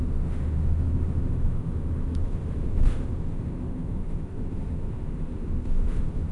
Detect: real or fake fake